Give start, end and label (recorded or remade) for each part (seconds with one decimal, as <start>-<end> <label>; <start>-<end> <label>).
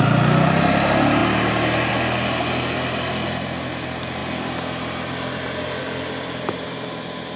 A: 0.0-7.4 recorded